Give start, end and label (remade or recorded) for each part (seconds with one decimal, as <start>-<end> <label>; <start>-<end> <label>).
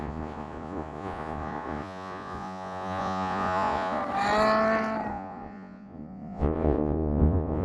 0.0-4.0 remade; 4.0-5.1 recorded; 5.1-7.6 remade